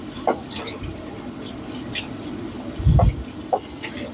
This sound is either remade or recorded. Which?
recorded